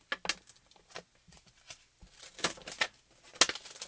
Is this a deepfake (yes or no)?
no